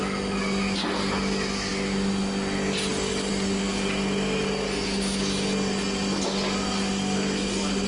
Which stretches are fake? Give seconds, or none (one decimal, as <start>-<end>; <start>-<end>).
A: none